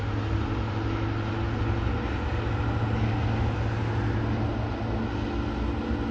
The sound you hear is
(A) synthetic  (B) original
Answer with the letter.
B